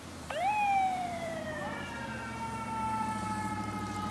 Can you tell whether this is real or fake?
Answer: fake